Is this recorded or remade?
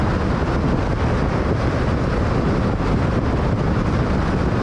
recorded